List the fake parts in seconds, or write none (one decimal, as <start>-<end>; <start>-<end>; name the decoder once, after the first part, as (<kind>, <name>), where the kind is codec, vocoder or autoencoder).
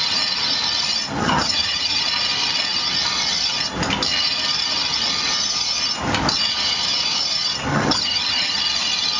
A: 1.2-2.0 (vocoder, HiFi-GAN); 7.7-8.6